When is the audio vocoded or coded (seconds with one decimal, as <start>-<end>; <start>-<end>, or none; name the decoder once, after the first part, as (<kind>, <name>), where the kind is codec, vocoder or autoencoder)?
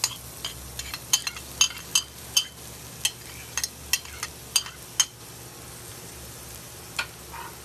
5.9-7.0 (vocoder, BigVGAN v2)